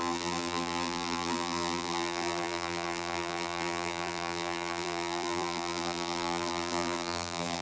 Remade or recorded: remade